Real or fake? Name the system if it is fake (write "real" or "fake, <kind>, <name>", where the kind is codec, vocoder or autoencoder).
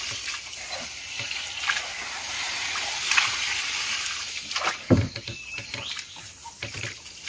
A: fake, vocoder, BigVGAN v2